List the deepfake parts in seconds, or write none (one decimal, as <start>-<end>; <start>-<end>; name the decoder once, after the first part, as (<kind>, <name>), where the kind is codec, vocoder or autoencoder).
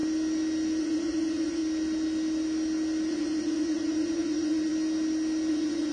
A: 0.8-1.6 (vocoder, Vocos); 3.1-4.7; 5.5-5.9